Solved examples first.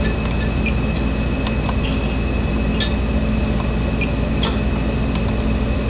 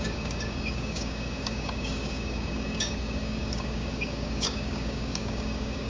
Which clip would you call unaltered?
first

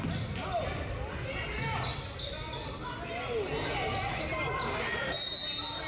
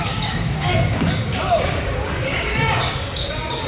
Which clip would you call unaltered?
first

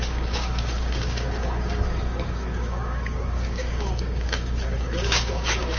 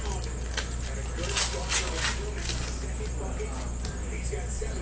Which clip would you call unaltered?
second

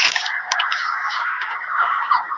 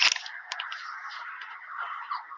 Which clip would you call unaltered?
second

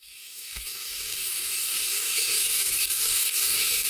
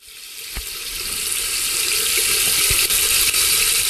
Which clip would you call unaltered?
second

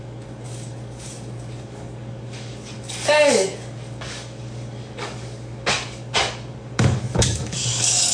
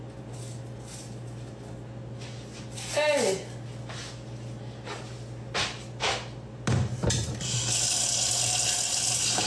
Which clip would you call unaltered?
second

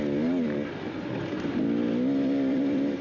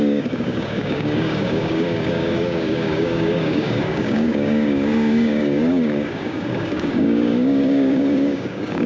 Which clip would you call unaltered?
first